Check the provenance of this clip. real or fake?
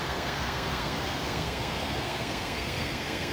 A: fake